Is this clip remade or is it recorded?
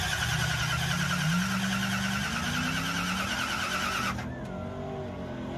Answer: recorded